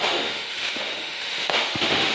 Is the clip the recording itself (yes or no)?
no